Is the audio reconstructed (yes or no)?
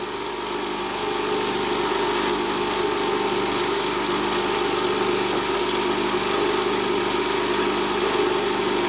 no